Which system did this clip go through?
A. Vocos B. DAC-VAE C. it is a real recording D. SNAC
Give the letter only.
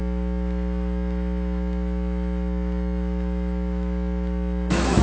B